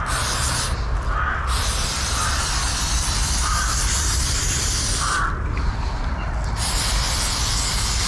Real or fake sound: real